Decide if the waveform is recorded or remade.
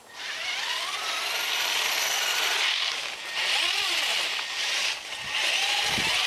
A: recorded